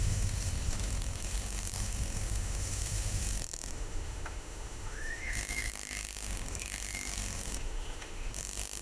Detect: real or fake fake